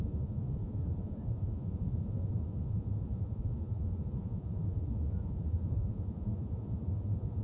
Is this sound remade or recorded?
remade